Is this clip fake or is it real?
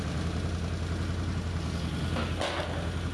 real